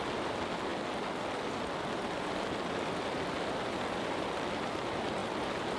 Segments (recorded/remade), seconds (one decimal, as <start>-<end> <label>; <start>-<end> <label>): 0.0-5.8 recorded